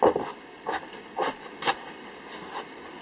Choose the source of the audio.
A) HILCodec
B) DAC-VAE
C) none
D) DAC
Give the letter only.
C